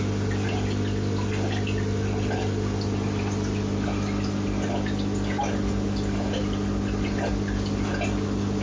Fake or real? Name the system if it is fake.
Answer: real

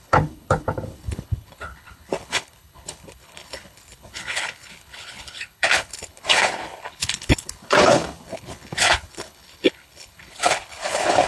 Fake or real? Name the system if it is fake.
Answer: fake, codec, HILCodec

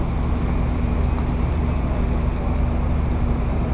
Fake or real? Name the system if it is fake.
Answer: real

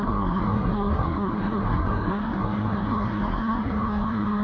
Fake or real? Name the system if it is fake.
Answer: fake, codec, SNAC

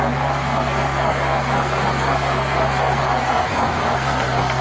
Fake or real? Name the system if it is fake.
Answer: fake, codec, SNAC